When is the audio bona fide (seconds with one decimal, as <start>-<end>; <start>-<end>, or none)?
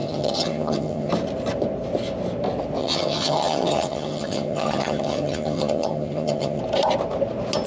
1.1-2.8; 6.6-7.7